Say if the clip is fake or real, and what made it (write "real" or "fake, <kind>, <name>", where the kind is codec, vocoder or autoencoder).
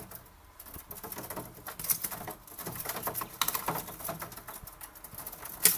real